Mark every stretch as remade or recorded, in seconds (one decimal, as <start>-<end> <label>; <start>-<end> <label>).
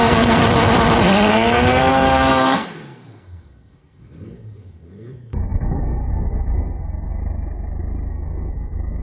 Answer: 0.0-0.4 remade; 0.4-1.3 recorded; 1.3-7.2 remade; 7.2-8.1 recorded; 8.1-9.0 remade